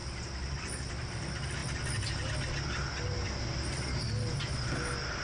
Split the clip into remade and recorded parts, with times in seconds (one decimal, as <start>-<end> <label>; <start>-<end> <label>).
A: 0.0-5.2 recorded